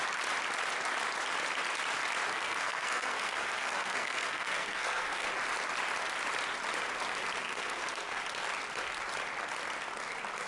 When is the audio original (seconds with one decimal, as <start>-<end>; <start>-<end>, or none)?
0.0-2.3; 5.3-7.4; 8.2-10.5